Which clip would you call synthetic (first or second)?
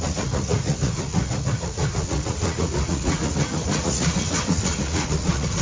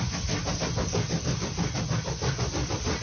first